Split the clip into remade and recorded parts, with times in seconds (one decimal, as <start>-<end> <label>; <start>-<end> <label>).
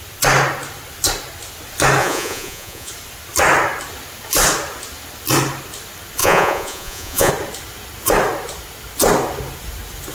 0.0-2.0 recorded; 2.0-2.9 remade; 2.9-6.2 recorded; 6.2-7.3 remade; 7.3-10.1 recorded